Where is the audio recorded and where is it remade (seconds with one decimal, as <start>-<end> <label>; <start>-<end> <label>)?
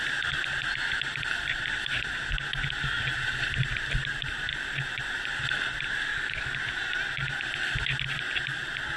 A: 0.0-6.1 recorded; 6.1-6.6 remade; 6.6-9.0 recorded